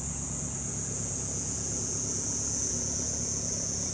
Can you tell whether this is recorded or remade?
remade